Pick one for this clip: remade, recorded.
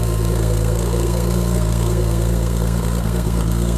remade